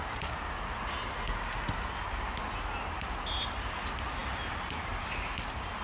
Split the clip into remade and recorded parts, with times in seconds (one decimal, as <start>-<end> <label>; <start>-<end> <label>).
0.0-5.8 recorded